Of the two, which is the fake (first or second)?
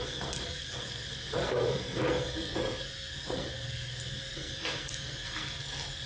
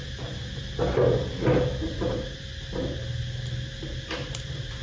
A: first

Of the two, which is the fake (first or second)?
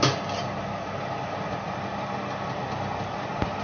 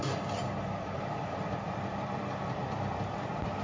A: second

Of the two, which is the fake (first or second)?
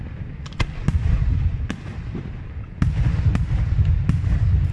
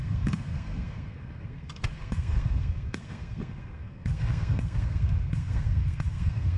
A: second